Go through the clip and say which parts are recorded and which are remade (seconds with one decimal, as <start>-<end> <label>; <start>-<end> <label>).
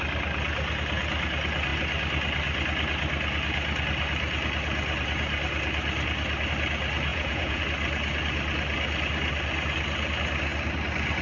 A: 0.0-7.1 recorded; 7.1-7.6 remade; 7.6-11.2 recorded